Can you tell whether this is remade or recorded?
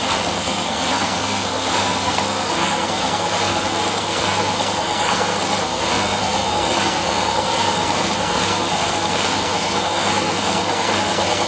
remade